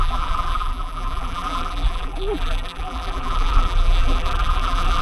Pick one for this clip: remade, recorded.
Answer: remade